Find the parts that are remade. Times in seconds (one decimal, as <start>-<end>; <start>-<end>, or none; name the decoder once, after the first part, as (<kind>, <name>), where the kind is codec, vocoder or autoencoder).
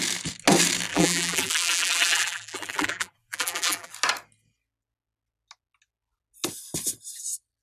0.9-3.9 (vocoder, BigVGAN v2)